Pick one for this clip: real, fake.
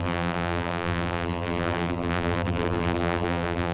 fake